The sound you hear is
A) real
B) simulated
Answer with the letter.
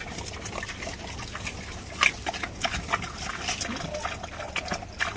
A